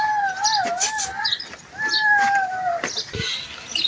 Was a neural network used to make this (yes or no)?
no